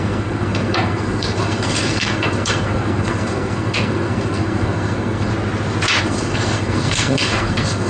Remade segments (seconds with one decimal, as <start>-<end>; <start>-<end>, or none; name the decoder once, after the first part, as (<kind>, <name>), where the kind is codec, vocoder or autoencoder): 0.0-5.3 (codec, SNAC); 6.0-7.9

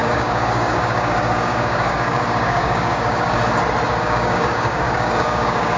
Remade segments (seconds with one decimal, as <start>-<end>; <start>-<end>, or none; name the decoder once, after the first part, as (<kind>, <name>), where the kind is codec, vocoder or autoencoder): 0.0-3.4 (codec, DAC); 4.0-5.8

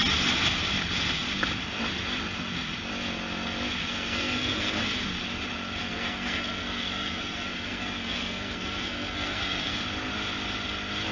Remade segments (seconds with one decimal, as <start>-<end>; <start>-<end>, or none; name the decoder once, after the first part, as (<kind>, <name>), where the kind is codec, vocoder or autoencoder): 3.8-4.8 (codec, SNAC); 5.8-9.8

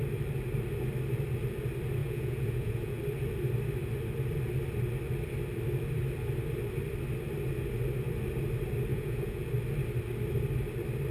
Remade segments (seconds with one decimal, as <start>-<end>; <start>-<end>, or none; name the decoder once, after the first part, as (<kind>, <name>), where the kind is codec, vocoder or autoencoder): 2.0-3.0 (vocoder, Vocos); 8.9-9.5

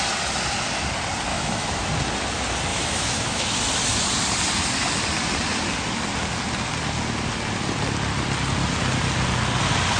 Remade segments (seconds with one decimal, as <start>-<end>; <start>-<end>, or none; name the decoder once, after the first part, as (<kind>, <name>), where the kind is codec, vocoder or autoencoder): 1.3-1.9 (autoencoder, DAC-VAE); 2.7-3.6

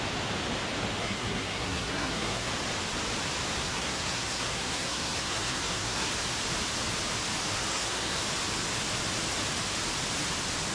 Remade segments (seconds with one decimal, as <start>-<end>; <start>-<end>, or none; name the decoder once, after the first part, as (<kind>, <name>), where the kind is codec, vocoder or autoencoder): 1.0-2.5 (codec, SNAC); 3.6-6.1; 7.7-8.2

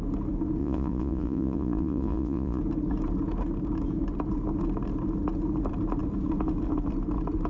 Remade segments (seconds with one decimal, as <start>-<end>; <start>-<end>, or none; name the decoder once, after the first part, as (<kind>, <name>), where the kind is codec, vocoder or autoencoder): 0.6-2.6 (vocoder, Vocos)

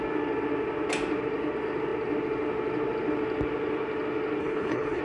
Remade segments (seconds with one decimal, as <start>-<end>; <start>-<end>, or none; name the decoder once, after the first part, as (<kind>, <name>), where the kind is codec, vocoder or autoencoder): 4.4-5.0 (codec, HILCodec)